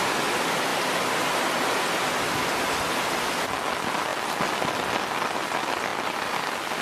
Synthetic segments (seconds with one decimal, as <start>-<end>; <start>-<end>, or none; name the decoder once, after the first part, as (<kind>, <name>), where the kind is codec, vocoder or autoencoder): none